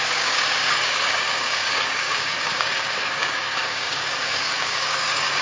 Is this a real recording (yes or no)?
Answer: no